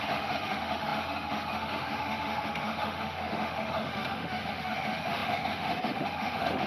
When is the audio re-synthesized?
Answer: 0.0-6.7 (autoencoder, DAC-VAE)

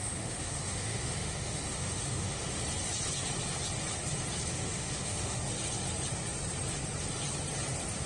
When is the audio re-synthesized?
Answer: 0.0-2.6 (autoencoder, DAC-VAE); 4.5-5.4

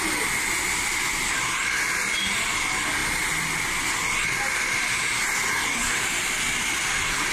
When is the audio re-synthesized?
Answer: none